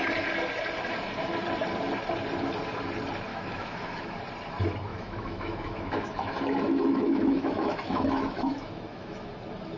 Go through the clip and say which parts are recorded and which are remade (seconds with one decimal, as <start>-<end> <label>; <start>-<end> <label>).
0.0-3.3 recorded; 3.3-4.0 remade; 4.0-4.9 recorded; 4.9-9.3 remade; 9.3-9.8 recorded